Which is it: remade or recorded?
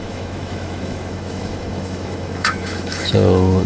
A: remade